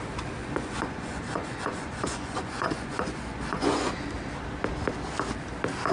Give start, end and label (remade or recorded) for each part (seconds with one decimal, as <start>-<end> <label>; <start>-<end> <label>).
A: 0.0-0.4 recorded; 0.4-3.9 remade; 3.9-5.9 recorded